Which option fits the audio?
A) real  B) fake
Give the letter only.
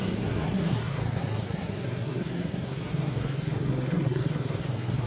B